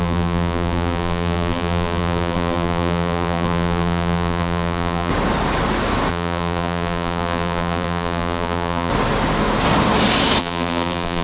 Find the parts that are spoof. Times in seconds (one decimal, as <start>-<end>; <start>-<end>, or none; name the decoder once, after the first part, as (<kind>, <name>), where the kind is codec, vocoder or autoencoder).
0.0-5.1 (vocoder, BigVGAN v2); 6.1-8.9; 10.4-11.2